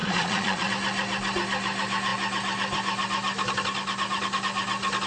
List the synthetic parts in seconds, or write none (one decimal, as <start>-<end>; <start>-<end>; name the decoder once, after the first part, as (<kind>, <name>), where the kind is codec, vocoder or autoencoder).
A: 0.0-0.7 (vocoder, Vocos)